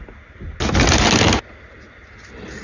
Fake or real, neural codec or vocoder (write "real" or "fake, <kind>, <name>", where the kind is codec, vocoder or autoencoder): real